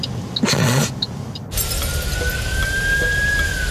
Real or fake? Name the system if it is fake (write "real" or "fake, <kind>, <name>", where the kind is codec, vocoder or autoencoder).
real